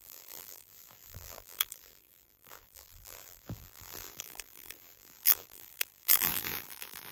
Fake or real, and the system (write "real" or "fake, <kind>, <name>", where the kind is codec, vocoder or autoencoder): fake, vocoder, BigVGAN v2